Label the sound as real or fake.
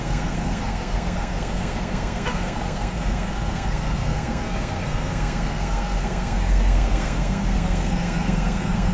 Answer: fake